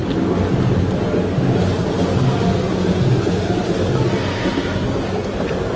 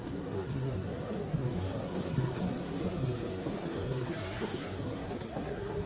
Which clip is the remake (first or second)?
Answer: second